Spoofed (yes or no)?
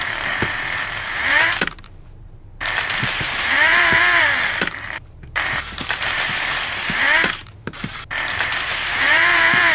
yes